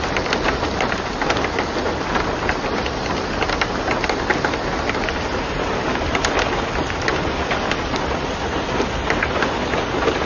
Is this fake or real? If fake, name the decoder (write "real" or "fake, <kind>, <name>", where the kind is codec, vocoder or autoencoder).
real